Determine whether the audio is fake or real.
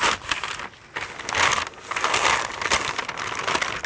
real